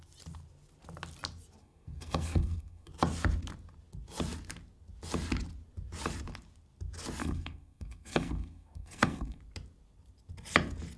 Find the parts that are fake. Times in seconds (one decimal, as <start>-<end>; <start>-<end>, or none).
1.6-2.9; 7.2-9.4

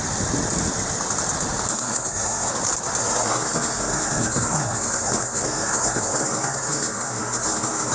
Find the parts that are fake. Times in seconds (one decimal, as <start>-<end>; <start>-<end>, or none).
1.7-2.5; 3.0-7.9

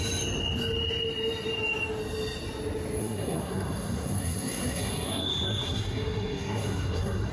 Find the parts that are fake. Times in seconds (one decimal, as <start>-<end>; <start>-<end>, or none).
3.0-7.3